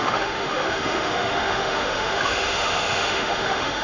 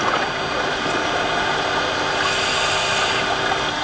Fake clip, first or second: first